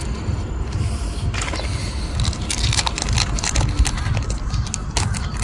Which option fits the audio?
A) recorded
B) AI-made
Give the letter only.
A